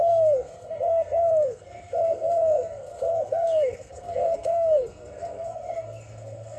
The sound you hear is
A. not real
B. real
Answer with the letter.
A